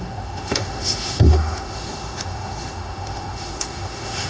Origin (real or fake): fake